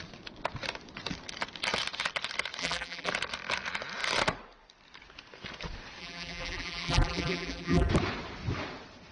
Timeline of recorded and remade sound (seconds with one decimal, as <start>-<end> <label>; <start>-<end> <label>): 0.0-2.6 recorded; 2.6-3.1 remade; 3.1-6.0 recorded; 6.0-7.9 remade; 7.9-9.1 recorded